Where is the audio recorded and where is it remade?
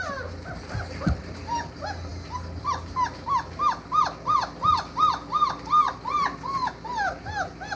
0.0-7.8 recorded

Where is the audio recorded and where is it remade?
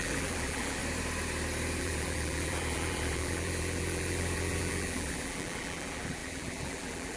0.0-0.8 remade; 0.8-1.8 recorded; 1.8-7.2 remade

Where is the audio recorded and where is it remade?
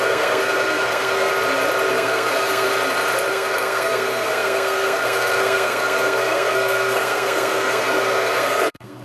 0.0-1.3 remade; 1.3-1.9 recorded; 1.9-2.7 remade; 2.7-3.3 recorded; 3.3-9.0 remade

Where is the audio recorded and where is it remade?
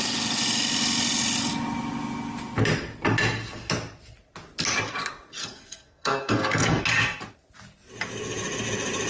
0.0-5.4 recorded; 5.4-6.8 remade; 6.8-9.1 recorded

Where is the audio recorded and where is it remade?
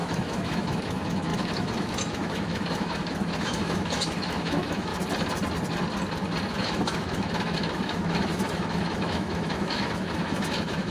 0.0-4.9 remade; 4.9-6.5 recorded; 6.5-10.9 remade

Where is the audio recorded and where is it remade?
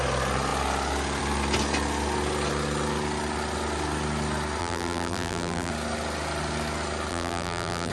0.0-4.6 recorded; 4.6-5.7 remade; 5.7-7.1 recorded; 7.1-7.9 remade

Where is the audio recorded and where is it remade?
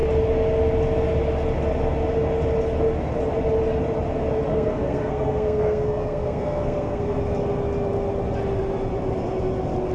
0.0-4.5 recorded; 4.5-7.2 remade; 7.2-9.9 recorded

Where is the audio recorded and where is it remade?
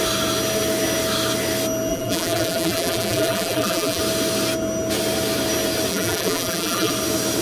0.0-1.9 recorded; 1.9-4.0 remade; 4.0-5.9 recorded; 5.9-6.9 remade; 6.9-7.4 recorded